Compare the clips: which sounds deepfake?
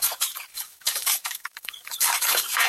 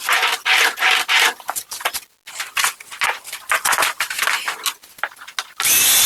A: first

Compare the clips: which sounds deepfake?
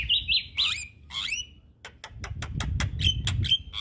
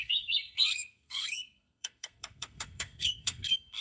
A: second